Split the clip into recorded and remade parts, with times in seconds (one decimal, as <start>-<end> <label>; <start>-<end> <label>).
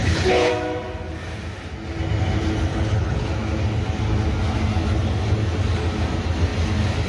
0.0-0.5 remade; 0.5-2.7 recorded; 2.7-3.3 remade; 3.3-7.1 recorded